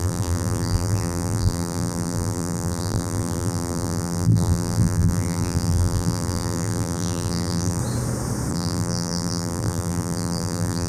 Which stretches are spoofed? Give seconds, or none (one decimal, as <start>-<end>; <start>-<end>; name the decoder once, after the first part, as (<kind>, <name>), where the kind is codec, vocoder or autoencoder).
0.0-7.8 (vocoder, BigVGAN v2); 8.5-10.9